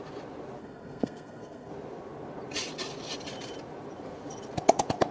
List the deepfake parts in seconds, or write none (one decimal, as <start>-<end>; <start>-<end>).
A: 0.6-1.7